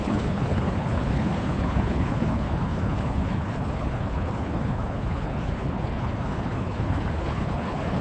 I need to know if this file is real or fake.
fake